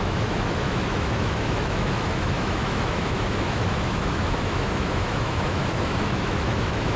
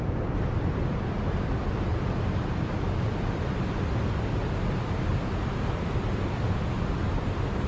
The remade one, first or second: first